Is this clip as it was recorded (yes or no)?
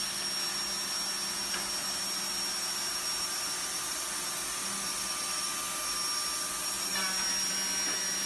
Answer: yes